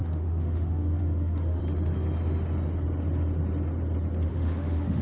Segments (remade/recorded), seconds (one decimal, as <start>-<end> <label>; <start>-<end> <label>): 0.0-1.6 remade; 1.6-4.3 recorded; 4.3-5.0 remade